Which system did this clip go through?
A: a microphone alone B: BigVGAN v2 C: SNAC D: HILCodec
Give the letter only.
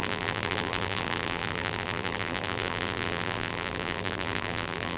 B